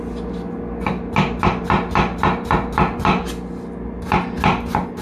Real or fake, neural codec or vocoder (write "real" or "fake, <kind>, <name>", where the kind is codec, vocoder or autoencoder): real